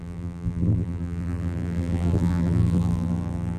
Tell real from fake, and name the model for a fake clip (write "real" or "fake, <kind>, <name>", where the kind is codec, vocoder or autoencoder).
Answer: fake, vocoder, BigVGAN v2